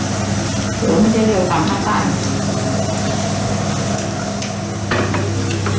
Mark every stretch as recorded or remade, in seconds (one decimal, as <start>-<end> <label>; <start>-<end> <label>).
0.0-5.8 recorded